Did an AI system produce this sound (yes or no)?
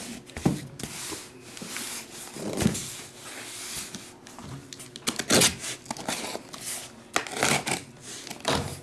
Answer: no